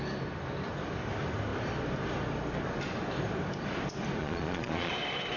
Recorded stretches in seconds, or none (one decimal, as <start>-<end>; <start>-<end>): 0.0-4.2; 4.9-5.4